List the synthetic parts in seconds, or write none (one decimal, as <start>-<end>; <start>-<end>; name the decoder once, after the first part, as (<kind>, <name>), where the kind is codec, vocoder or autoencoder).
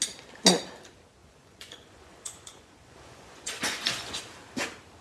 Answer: 1.2-4.2 (vocoder, Vocos)